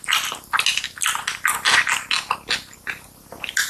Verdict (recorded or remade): recorded